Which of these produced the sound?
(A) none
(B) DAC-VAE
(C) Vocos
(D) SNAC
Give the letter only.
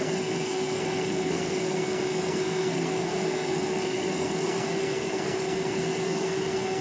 D